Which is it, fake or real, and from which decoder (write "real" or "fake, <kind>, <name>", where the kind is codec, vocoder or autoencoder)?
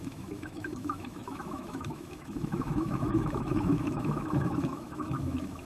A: fake, autoencoder, DAC-VAE